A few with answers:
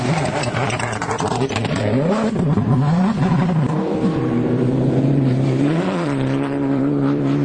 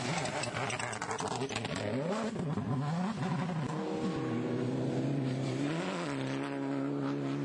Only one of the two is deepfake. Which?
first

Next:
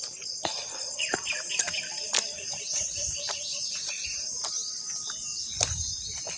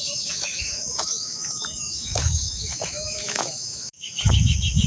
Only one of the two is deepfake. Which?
second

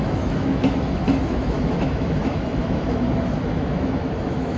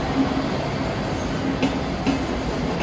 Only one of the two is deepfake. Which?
first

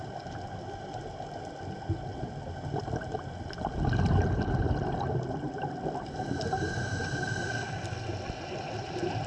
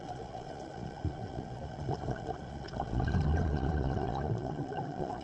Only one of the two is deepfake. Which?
second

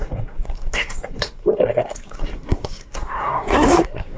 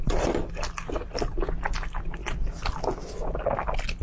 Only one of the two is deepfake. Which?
first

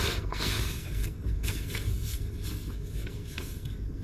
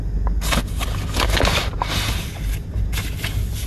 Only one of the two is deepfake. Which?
first